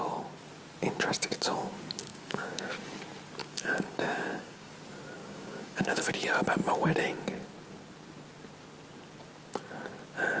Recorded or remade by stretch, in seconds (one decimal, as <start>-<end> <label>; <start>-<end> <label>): 0.0-2.1 recorded; 2.1-2.6 remade; 2.6-3.4 recorded; 3.4-4.7 remade; 4.7-5.2 recorded; 5.2-6.1 remade; 6.1-10.4 recorded